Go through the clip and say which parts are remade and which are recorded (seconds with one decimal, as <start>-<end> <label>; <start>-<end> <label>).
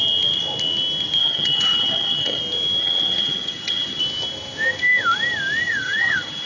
0.0-1.2 recorded; 1.2-2.4 remade; 2.4-2.8 recorded; 2.8-4.0 remade; 4.0-5.7 recorded; 5.7-6.5 remade